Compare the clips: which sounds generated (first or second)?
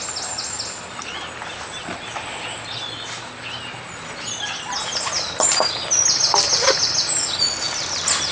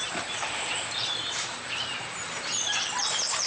second